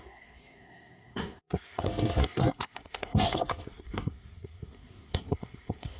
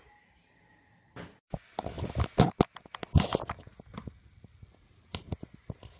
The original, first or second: second